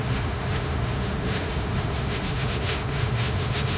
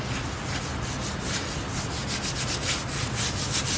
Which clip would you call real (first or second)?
second